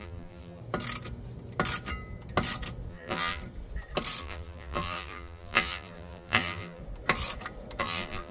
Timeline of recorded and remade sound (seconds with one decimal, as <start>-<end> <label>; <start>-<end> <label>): 0.0-0.6 remade; 0.6-2.9 recorded; 2.9-3.4 remade; 3.4-4.2 recorded; 4.2-6.8 remade; 6.8-7.8 recorded; 7.8-8.3 remade